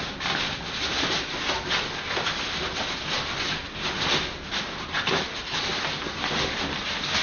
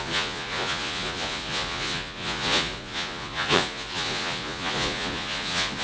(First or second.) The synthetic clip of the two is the second